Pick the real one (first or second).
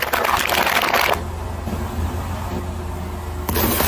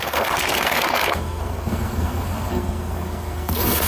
first